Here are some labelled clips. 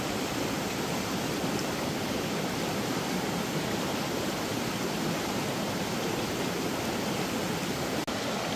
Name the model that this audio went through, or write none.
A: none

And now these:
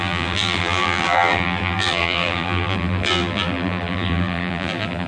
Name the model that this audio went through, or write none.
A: vocoder, BigVGAN v2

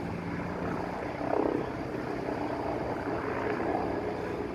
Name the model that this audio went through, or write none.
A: none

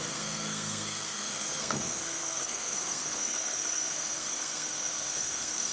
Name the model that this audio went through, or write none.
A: codec, SNAC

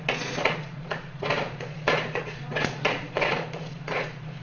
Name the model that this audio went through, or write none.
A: vocoder, Vocos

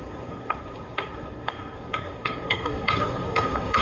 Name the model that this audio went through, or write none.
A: codec, SNAC